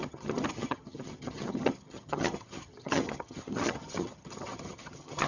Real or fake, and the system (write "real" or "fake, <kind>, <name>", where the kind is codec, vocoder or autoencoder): fake, vocoder, HiFi-GAN